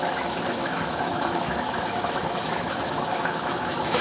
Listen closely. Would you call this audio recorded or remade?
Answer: remade